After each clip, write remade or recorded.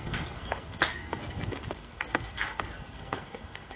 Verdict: remade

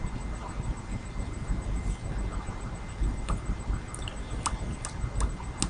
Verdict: recorded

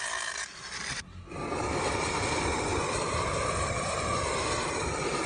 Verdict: recorded